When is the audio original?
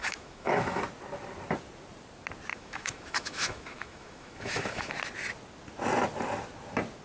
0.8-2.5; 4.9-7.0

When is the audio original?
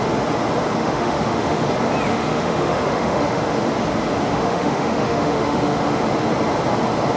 0.0-0.8; 1.7-2.1; 3.4-4.3; 6.0-7.2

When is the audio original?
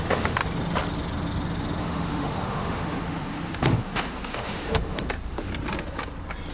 0.4-1.8; 5.5-6.5